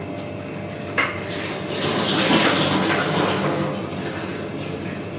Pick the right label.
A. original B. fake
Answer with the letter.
A